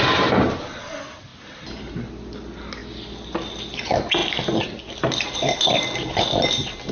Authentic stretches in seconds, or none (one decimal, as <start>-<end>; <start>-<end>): 0.0-1.3; 2.1-6.9